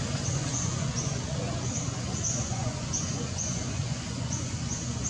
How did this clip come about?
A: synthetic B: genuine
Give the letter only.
A